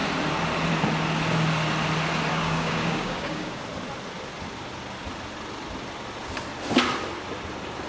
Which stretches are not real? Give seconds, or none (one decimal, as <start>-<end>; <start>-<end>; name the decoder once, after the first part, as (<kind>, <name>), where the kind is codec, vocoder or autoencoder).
2.3-3.6 (codec, DAC)